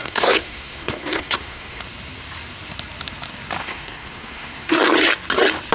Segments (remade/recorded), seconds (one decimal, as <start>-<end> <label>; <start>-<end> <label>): 0.0-1.8 remade; 1.8-3.6 recorded; 3.6-4.8 remade; 4.8-5.7 recorded